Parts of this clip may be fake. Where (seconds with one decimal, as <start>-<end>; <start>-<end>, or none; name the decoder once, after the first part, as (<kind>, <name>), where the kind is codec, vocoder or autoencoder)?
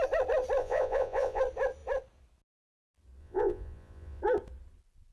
0.6-1.4 (vocoder, Vocos); 3.2-4.2